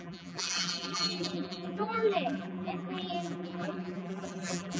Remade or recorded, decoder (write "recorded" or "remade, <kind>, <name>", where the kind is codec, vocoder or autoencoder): remade, vocoder, BigVGAN v2